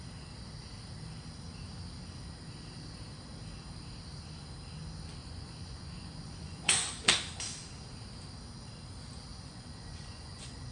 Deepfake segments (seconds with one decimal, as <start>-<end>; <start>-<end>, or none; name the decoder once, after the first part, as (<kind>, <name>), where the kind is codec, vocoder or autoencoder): 5.2-7.0 (vocoder, Vocos); 9.3-10.7